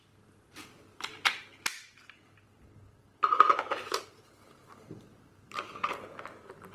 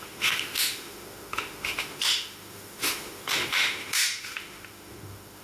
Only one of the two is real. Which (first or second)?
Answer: first